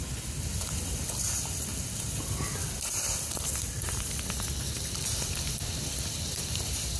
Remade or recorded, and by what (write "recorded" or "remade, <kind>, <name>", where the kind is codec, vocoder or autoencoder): remade, vocoder, BigVGAN v2